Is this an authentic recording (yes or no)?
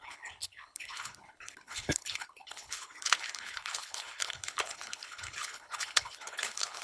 no